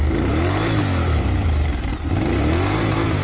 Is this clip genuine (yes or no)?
no